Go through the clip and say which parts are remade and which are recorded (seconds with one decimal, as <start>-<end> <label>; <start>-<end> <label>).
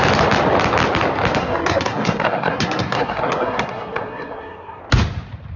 0.0-1.4 recorded; 1.4-4.8 remade; 4.8-5.6 recorded